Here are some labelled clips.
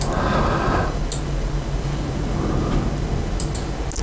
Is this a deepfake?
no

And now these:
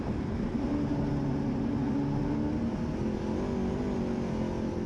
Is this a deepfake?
no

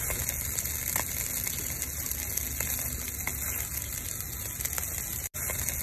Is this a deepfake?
no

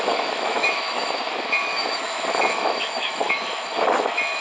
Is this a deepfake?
yes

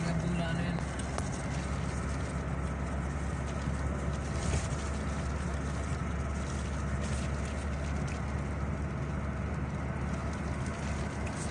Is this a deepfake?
no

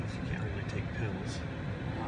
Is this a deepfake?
no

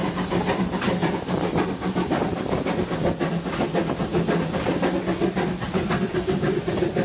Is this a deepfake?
yes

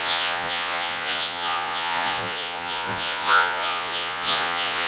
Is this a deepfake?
yes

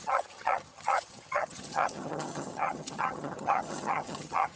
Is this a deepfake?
yes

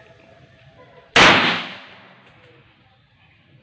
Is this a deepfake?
no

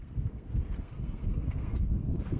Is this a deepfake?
yes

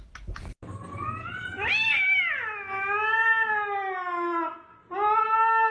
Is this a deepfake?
no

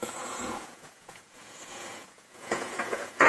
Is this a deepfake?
yes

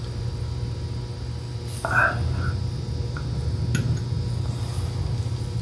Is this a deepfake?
no